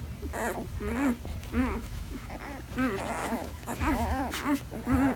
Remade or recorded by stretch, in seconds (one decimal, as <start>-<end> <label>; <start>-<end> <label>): 0.0-1.6 recorded; 1.6-2.3 remade; 2.3-3.2 recorded; 3.2-4.2 remade; 4.2-5.2 recorded